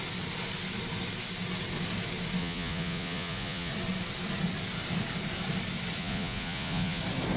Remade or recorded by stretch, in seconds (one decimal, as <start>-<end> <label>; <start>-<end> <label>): 0.0-2.4 recorded; 2.4-3.7 remade; 3.7-6.0 recorded; 6.0-7.0 remade; 7.0-7.4 recorded